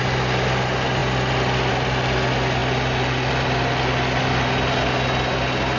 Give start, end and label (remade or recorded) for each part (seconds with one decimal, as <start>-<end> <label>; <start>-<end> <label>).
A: 0.0-5.8 recorded